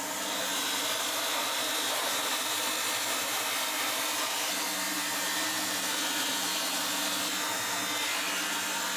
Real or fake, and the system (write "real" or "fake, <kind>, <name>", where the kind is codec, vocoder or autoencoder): real